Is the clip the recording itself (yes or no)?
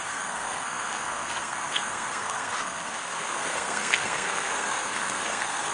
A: no